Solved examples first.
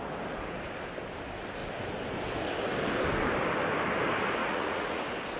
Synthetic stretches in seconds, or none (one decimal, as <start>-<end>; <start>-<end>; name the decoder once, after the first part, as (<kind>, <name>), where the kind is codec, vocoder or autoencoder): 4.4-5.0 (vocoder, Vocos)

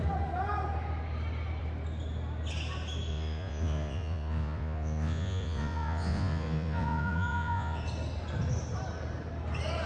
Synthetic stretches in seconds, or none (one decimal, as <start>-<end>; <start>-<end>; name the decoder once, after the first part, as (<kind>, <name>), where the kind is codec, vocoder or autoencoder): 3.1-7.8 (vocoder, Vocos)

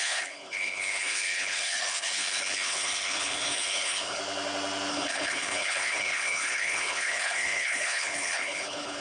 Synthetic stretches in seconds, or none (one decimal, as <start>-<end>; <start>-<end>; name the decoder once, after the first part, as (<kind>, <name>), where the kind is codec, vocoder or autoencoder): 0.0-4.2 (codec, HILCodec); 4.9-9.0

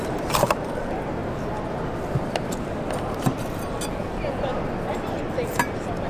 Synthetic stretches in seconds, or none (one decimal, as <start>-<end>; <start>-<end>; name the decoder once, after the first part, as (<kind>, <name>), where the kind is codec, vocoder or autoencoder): 0.0-1.2 (vocoder, BigVGAN v2); 4.9-6.1

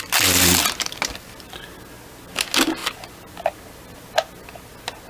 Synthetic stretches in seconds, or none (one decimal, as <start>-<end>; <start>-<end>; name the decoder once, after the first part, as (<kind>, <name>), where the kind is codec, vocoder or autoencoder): none

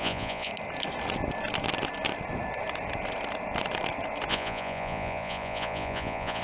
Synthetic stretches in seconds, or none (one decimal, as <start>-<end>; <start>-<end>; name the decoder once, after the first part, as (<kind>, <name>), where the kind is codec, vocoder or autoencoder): 0.0-0.5 (vocoder, Vocos); 4.3-6.4

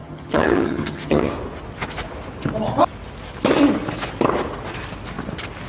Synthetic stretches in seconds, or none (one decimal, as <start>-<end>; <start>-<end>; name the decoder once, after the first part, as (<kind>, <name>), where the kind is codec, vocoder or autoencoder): 0.0-1.3 (vocoder, HiFi-GAN)

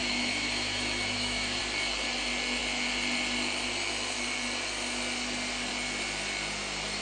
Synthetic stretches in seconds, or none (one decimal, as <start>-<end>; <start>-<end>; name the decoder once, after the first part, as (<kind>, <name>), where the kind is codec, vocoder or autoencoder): 0.0-1.6 (autoencoder, DAC-VAE)